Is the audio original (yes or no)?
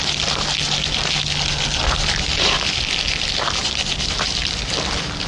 yes